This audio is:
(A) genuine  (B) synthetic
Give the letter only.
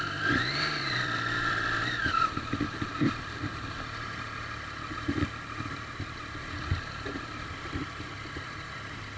B